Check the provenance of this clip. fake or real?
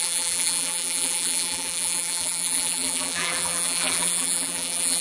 fake